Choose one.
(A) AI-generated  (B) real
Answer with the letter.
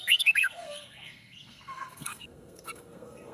A